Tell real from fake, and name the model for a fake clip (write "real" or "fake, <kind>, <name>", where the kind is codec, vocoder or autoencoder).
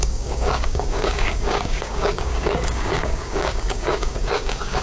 fake, codec, DAC